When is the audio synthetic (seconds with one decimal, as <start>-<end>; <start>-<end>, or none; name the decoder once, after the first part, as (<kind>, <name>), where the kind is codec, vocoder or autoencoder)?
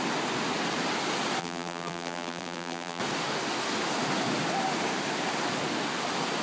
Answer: 1.4-3.0 (vocoder, BigVGAN v2)